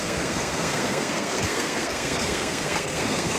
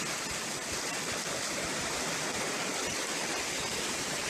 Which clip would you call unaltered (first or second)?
second